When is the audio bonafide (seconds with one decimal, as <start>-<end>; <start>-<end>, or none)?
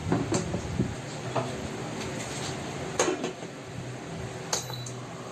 0.0-5.3